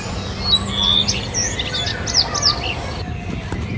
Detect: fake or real real